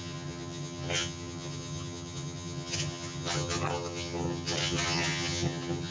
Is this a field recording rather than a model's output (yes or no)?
no